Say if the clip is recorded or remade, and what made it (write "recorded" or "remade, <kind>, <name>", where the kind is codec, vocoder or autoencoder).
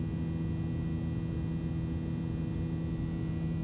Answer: recorded